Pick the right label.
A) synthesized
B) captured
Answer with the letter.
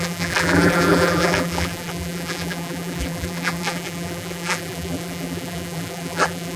A